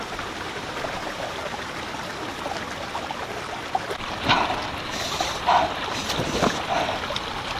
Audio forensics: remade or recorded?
recorded